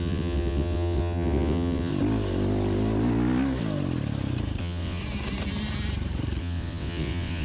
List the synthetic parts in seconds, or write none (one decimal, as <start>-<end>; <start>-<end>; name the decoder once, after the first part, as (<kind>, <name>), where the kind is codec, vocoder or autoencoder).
0.0-1.9 (vocoder, WaveNeXt); 4.6-5.0; 6.4-7.4